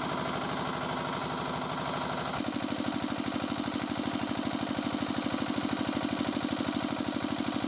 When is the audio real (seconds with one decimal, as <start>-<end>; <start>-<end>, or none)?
0.0-7.7

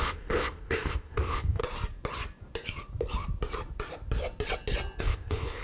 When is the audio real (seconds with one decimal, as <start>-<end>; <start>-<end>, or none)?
1.6-5.0

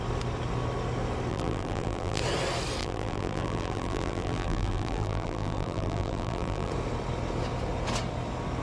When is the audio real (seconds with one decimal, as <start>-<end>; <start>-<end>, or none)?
0.0-1.3; 2.2-2.8; 6.7-8.6

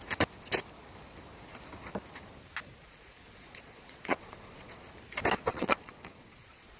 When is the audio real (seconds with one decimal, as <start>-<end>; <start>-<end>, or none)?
0.0-2.8; 4.9-5.5

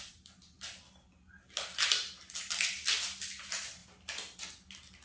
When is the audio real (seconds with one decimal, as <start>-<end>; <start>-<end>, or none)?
0.0-5.0

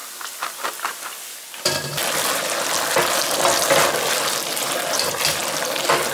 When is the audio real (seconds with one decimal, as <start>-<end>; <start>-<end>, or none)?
0.0-6.1